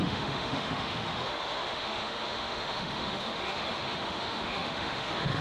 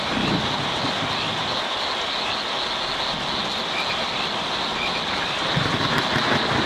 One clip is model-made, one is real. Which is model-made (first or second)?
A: first